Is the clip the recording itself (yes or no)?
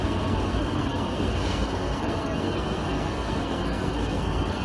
no